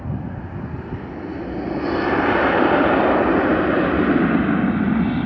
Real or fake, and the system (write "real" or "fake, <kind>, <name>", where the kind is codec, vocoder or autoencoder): real